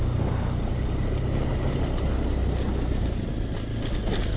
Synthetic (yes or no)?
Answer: no